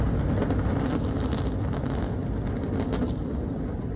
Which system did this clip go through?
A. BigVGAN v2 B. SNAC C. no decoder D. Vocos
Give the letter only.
C